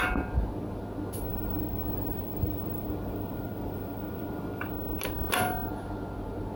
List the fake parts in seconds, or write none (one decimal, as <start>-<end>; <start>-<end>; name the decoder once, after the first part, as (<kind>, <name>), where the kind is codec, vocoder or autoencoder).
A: 1.3-4.7 (vocoder, BigVGAN v2)